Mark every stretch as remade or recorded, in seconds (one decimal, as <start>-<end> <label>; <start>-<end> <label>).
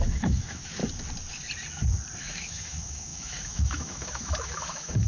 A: 0.0-0.8 remade; 0.8-2.2 recorded; 2.2-5.1 remade